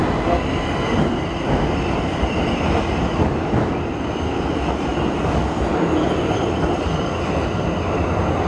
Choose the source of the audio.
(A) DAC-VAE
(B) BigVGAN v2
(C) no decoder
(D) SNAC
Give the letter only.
C